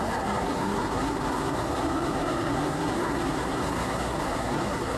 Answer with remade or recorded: remade